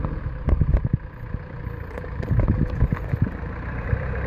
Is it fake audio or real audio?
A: fake